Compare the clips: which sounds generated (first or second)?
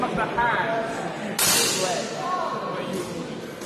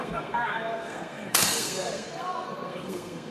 second